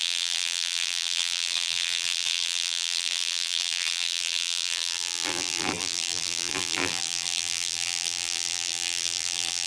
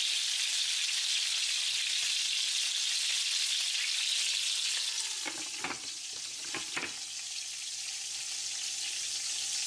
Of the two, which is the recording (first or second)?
second